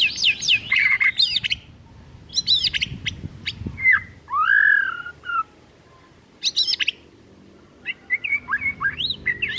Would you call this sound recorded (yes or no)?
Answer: yes